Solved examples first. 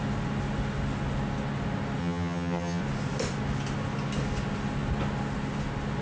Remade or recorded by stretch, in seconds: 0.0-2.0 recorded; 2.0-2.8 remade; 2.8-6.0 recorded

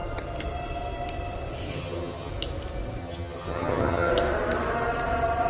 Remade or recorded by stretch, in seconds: 0.0-1.7 recorded; 1.7-2.3 remade; 2.3-3.0 recorded; 3.0-4.1 remade; 4.1-5.5 recorded

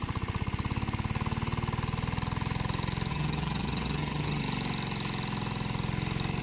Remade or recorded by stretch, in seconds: 0.0-3.1 recorded; 3.1-4.4 remade; 4.4-6.4 recorded

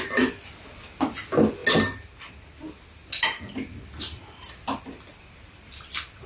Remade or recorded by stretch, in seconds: 0.0-6.3 recorded

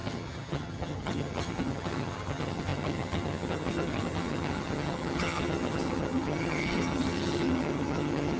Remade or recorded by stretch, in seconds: 0.0-8.4 remade